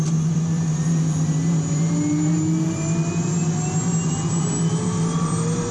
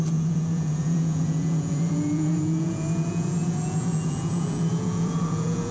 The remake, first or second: second